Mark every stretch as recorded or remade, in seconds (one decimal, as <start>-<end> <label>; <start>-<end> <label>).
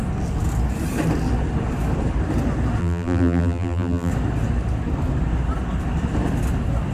0.0-2.8 recorded; 2.8-4.1 remade; 4.1-6.9 recorded